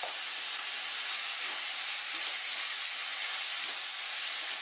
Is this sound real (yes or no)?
yes